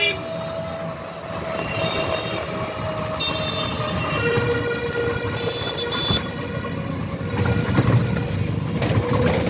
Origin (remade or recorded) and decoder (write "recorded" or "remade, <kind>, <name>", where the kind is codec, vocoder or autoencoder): recorded